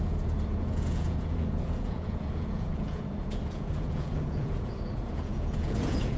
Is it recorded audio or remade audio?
remade